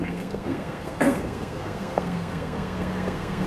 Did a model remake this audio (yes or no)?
yes